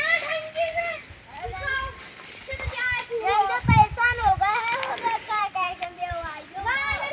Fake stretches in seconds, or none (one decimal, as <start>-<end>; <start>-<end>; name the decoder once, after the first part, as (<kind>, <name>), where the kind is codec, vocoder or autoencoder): 2.5-7.1 (vocoder, BigVGAN v2)